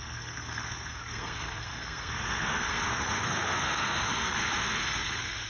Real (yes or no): no